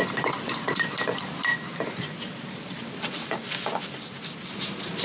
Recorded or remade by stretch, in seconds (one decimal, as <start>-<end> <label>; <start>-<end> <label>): 0.0-5.0 recorded